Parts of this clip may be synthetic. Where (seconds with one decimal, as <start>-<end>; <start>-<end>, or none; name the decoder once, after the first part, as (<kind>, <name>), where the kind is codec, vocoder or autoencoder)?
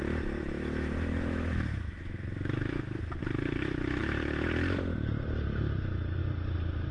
0.4-3.2 (autoencoder, DAC-VAE)